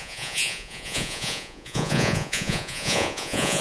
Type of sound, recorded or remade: remade